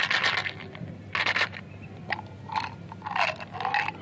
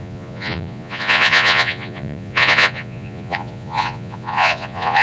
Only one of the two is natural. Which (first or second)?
first